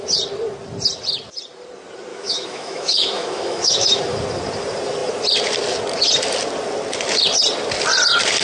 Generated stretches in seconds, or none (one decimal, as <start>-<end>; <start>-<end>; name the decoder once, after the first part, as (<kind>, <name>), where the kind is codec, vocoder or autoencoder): 2.1-4.0 (autoencoder, DAC-VAE)